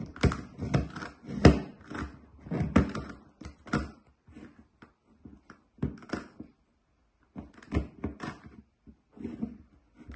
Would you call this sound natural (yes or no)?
yes